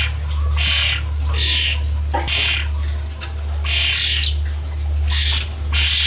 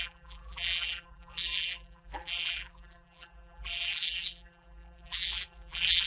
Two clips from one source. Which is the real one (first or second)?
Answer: first